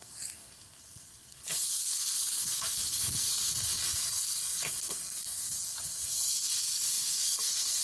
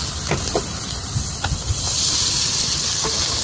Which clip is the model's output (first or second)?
first